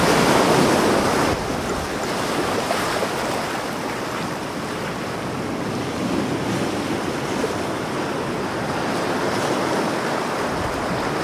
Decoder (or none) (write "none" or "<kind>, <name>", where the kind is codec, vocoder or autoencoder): none